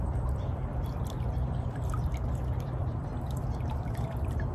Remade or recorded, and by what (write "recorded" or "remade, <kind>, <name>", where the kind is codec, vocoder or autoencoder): remade, vocoder, BigVGAN v2